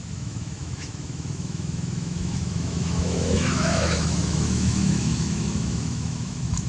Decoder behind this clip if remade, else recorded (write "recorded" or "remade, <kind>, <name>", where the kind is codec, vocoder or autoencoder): remade, autoencoder, DAC-VAE